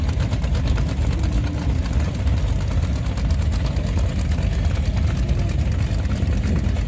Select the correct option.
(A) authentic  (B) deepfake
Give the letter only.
A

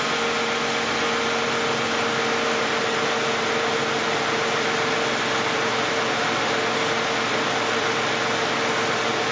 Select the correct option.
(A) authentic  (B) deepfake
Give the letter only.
A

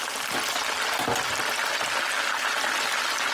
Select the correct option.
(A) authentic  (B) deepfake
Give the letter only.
A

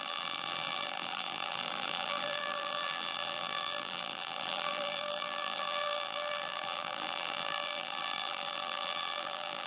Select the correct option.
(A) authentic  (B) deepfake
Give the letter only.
B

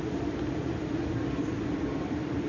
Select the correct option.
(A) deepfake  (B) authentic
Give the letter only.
A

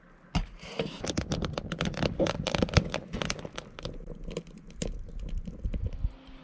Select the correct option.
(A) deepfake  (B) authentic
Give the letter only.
B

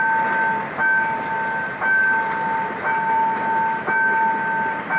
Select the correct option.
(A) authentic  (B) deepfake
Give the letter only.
A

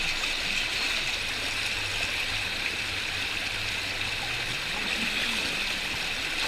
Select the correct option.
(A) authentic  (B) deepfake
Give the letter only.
A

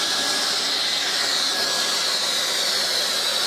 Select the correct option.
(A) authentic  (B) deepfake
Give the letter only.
A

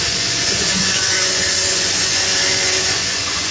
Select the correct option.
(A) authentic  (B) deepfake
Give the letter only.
B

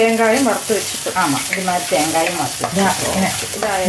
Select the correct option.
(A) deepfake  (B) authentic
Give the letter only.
B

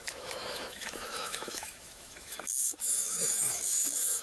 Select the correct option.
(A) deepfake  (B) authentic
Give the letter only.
A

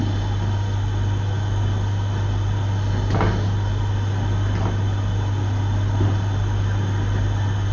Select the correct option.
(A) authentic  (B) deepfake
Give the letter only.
A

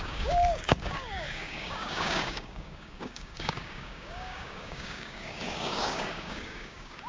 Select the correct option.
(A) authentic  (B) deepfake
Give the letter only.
B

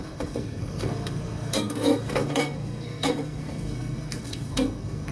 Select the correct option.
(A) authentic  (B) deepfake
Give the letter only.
B